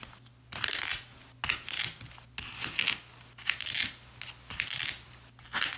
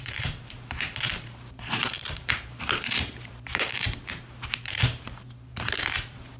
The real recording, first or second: first